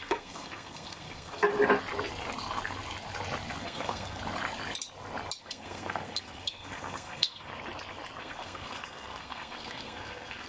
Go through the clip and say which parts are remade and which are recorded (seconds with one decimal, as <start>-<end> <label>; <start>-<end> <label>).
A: 0.0-1.5 remade; 1.5-3.6 recorded; 3.6-4.2 remade; 4.2-5.4 recorded; 5.4-7.5 remade; 7.5-8.2 recorded; 8.2-10.5 remade